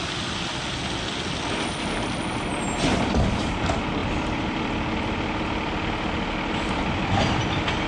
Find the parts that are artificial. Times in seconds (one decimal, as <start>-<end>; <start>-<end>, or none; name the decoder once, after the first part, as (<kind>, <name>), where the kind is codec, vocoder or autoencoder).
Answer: none